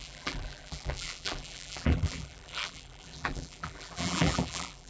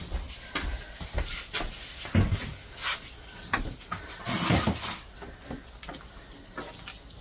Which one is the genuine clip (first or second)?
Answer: second